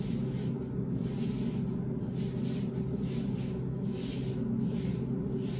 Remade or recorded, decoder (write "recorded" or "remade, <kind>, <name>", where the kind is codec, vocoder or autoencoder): recorded